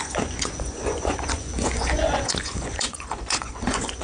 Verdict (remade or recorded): remade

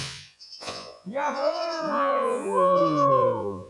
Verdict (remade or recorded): remade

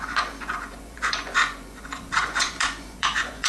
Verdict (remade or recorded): remade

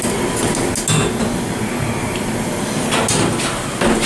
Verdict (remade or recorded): recorded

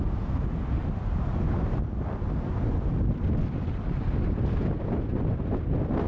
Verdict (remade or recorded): recorded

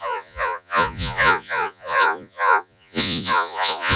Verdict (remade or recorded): remade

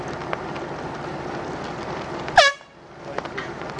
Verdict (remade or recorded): recorded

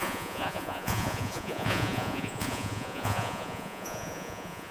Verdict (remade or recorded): remade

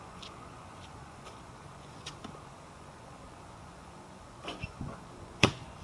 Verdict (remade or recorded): remade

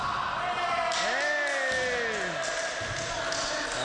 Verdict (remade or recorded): recorded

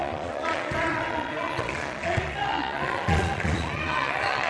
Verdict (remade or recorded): remade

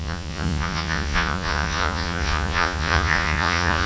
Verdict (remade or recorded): remade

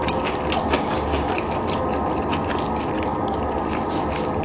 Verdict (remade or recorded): recorded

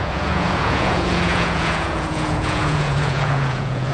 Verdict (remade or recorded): remade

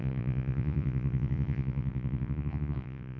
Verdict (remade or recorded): remade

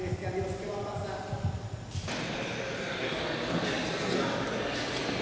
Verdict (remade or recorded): recorded